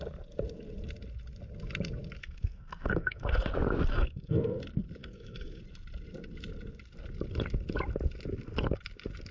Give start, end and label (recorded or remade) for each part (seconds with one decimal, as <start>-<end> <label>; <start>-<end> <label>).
0.0-2.2 recorded; 2.2-3.5 remade; 3.5-3.9 recorded; 3.9-4.6 remade; 4.6-5.0 recorded; 5.0-5.6 remade; 5.6-9.3 recorded